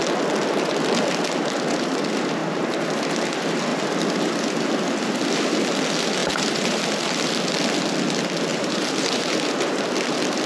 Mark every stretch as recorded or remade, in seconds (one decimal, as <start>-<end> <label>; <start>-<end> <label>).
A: 0.0-2.4 recorded; 2.4-3.1 remade; 3.1-6.2 recorded; 6.2-6.8 remade; 6.8-8.5 recorded; 8.5-9.8 remade; 9.8-10.5 recorded